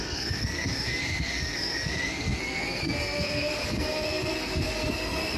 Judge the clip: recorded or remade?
remade